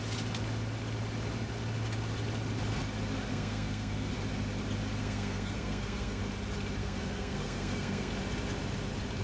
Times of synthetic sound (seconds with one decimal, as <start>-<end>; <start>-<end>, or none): 3.3-4.1; 5.0-6.2; 6.8-8.1